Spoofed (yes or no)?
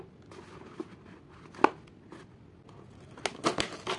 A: no